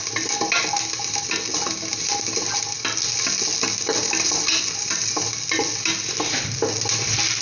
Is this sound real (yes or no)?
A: yes